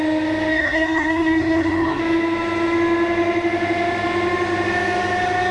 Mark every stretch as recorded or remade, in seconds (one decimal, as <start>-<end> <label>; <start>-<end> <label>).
0.0-0.5 recorded; 0.5-2.0 remade; 2.0-5.5 recorded